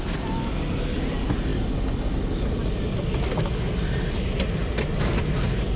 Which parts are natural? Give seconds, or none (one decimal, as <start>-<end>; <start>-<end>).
0.0-5.8